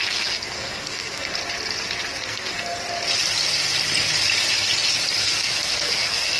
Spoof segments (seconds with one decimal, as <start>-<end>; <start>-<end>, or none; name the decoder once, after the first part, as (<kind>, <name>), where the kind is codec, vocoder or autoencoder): 0.0-1.3 (codec, SNAC); 2.2-2.8; 5.2-6.4